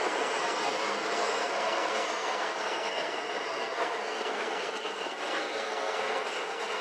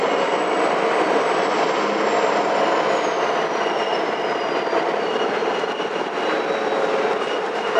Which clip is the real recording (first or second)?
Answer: second